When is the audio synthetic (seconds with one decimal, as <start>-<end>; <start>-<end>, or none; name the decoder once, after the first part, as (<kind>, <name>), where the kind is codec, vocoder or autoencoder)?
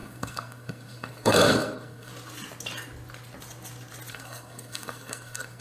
0.0-2.1 (codec, SNAC); 4.1-5.6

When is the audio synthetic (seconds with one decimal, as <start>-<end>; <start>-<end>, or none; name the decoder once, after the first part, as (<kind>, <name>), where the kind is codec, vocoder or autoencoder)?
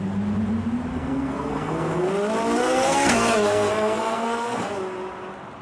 0.9-2.1 (codec, SNAC); 2.6-4.7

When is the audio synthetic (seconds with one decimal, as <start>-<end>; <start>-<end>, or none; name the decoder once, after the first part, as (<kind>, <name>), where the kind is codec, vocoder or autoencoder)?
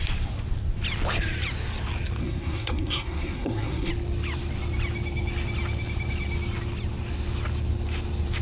2.2-3.9 (codec, SNAC)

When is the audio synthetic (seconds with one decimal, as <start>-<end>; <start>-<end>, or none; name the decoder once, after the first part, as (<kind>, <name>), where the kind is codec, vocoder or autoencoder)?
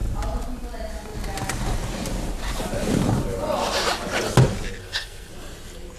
4.8-5.3 (codec, SNAC)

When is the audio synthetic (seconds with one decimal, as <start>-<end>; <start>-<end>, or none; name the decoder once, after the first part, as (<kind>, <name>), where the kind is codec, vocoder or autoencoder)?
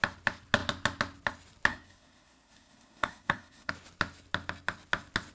1.7-3.7 (codec, SNAC)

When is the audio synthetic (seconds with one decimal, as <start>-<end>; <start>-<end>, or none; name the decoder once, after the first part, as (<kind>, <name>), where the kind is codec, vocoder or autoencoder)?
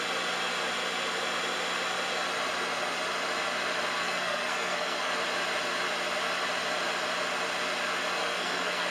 4.0-5.1 (codec, SNAC); 8.2-8.9